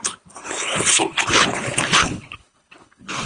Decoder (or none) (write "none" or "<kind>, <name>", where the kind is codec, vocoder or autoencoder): codec, HILCodec